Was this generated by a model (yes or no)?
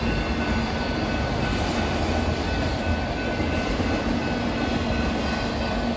no